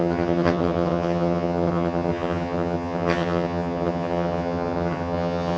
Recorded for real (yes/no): no